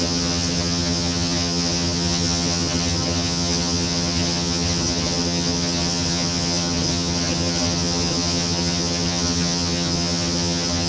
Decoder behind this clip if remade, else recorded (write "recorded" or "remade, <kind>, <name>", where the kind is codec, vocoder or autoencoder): remade, vocoder, HiFi-GAN